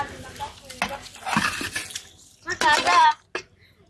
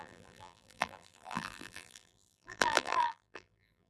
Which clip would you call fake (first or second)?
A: second